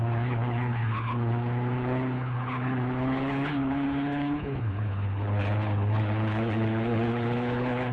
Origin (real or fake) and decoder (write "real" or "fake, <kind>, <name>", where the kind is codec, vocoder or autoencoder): fake, codec, HILCodec